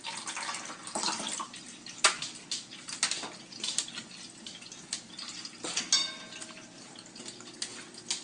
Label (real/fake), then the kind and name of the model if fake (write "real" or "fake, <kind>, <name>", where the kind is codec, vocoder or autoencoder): real